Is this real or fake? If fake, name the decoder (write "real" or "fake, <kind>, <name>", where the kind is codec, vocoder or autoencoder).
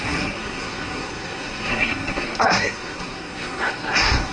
fake, codec, SNAC